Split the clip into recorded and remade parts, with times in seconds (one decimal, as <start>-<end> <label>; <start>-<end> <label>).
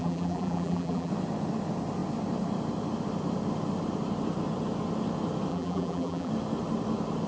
0.0-1.1 remade; 1.1-5.5 recorded; 5.5-6.3 remade; 6.3-7.3 recorded